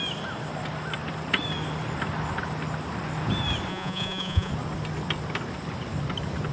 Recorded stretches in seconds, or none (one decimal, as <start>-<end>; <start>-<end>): 0.0-3.7; 4.5-6.5